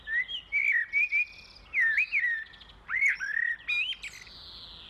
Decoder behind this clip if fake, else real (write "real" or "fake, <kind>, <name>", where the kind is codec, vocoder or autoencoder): real